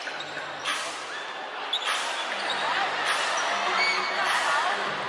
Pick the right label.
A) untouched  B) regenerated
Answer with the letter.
A